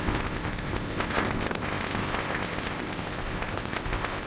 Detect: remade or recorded remade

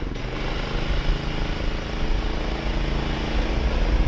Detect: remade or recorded recorded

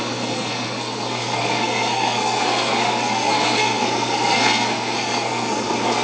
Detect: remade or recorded remade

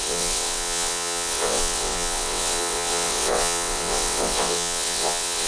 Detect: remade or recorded remade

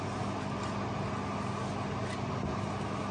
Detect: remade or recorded recorded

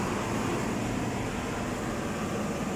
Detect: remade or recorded recorded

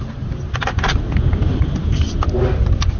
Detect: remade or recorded recorded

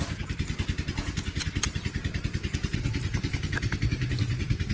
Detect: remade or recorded recorded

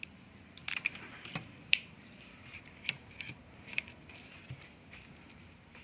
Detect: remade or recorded remade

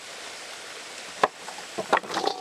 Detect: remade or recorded recorded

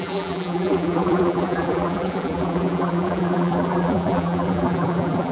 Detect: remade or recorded remade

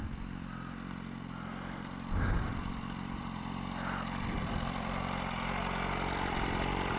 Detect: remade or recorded remade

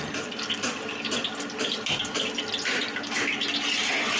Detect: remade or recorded recorded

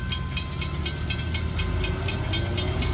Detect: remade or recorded recorded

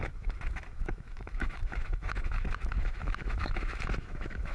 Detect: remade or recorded remade